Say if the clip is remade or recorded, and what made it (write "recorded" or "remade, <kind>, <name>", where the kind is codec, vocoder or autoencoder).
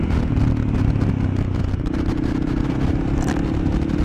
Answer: recorded